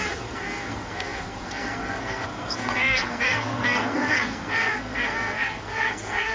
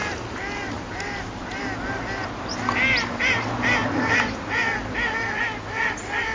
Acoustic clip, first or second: second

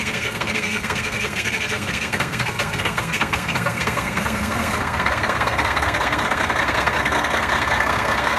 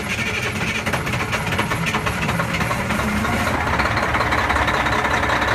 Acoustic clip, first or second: second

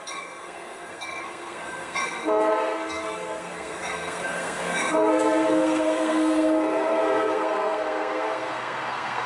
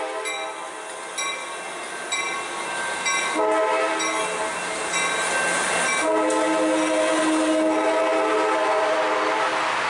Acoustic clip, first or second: second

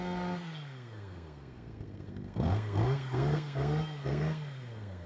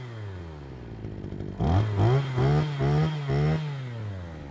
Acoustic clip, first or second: second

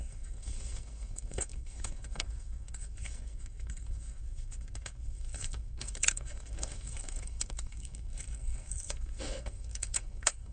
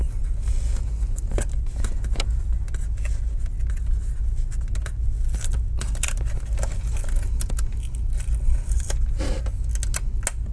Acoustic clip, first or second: second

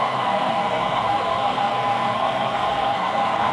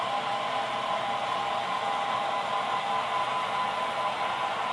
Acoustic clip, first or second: second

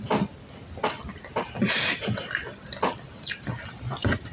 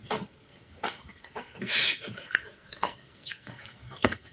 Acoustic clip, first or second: first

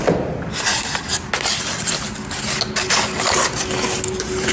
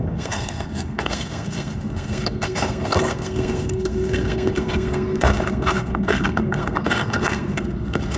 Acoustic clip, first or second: first